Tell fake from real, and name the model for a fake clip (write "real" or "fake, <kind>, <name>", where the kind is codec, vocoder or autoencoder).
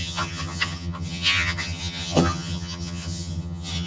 fake, vocoder, HiFi-GAN